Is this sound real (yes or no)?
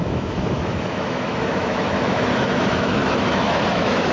no